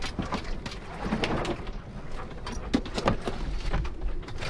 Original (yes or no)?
yes